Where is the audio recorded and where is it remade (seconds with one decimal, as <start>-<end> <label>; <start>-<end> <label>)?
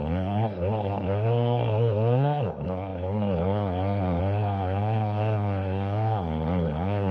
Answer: 0.0-7.1 remade